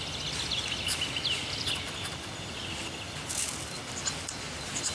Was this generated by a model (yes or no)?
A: no